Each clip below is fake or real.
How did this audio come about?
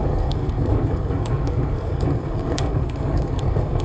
fake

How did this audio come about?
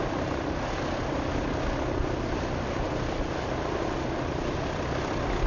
real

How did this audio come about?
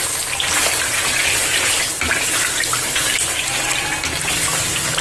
real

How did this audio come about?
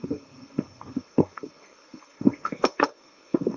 fake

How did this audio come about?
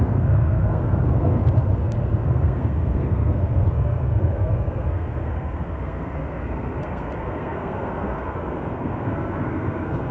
fake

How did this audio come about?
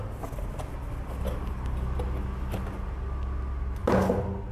real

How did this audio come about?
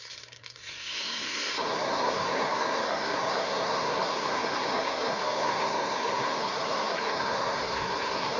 fake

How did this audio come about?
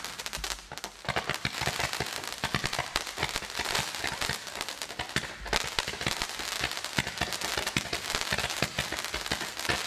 real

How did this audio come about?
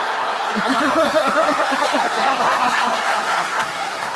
fake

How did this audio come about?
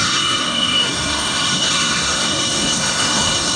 fake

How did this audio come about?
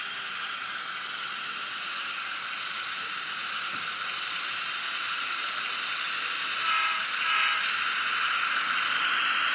real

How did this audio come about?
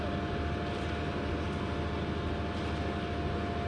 real